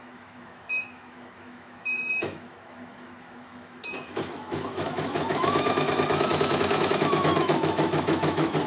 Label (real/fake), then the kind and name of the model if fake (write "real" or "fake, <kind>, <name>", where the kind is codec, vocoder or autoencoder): fake, autoencoder, DAC-VAE